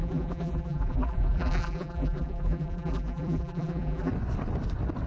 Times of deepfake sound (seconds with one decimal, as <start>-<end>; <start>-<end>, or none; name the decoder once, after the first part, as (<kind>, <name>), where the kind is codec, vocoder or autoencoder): 0.0-4.1 (vocoder, BigVGAN v2)